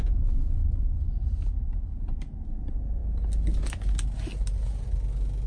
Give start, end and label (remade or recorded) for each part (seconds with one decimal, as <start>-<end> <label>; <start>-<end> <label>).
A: 0.0-5.5 recorded